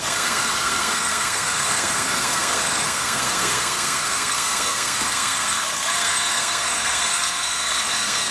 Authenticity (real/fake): fake